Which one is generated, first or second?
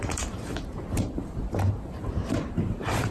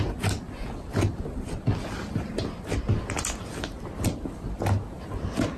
first